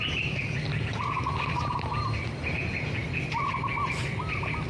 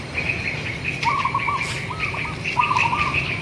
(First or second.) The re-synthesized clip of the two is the second